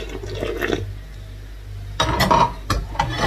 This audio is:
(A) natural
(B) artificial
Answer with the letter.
A